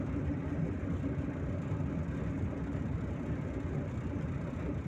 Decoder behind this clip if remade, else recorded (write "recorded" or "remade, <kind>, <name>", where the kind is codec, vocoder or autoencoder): recorded